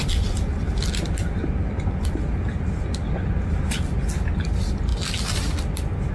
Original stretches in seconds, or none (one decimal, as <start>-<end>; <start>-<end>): 0.0-6.1